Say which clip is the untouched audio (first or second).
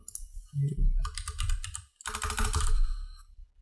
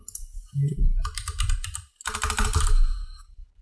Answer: first